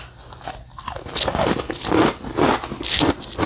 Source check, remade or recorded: recorded